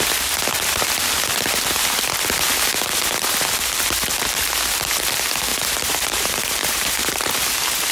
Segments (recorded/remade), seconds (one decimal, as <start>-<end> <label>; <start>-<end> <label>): 0.0-5.5 recorded; 5.5-7.3 remade; 7.3-7.9 recorded

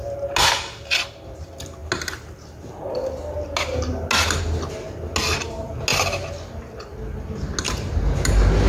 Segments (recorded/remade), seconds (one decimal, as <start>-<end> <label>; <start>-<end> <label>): 0.0-8.7 recorded

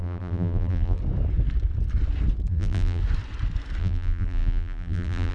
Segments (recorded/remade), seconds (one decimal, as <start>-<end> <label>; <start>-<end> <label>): 0.0-1.0 remade; 1.0-2.5 recorded; 2.5-3.0 remade; 3.0-3.8 recorded; 3.8-5.3 remade

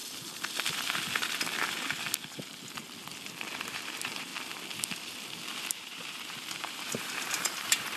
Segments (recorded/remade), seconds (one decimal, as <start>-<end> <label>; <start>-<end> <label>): 0.0-3.5 recorded; 3.5-4.3 remade; 4.3-5.6 recorded; 5.6-8.0 remade

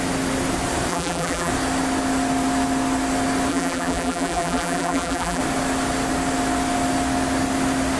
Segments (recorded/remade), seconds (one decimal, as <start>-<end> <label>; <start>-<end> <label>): 0.0-0.9 recorded; 0.9-1.5 remade; 1.5-3.5 recorded; 3.5-5.4 remade; 5.4-8.0 recorded

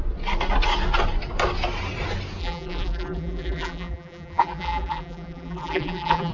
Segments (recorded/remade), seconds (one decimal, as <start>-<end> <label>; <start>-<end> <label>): 0.0-2.4 recorded; 2.4-6.3 remade

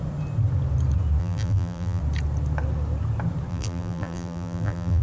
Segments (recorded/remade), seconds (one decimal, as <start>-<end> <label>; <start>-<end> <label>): 0.0-1.2 recorded; 1.2-2.0 remade; 2.0-3.5 recorded; 3.5-5.0 remade